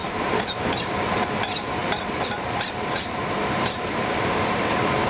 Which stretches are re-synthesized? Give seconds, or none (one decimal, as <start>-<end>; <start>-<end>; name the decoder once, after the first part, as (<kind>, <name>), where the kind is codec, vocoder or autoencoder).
0.0-5.1 (vocoder, BigVGAN v2)